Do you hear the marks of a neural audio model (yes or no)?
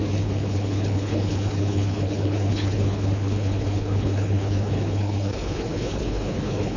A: yes